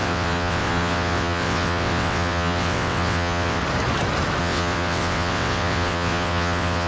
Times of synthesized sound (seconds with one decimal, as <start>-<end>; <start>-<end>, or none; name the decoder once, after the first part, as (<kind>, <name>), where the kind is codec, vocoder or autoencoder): 0.0-3.6 (vocoder, WaveNeXt); 4.4-6.9